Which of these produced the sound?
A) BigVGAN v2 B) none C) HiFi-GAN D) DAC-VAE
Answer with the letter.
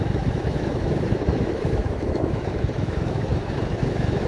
D